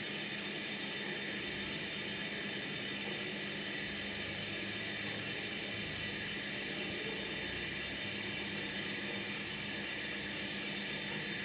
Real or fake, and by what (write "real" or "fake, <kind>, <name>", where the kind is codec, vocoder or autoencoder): real